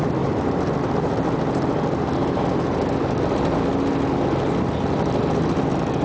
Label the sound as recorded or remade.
recorded